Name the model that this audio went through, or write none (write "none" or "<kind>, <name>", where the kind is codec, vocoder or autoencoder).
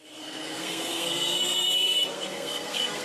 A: codec, SNAC